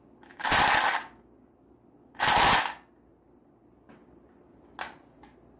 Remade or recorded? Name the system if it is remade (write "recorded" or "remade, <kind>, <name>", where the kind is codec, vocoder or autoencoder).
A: recorded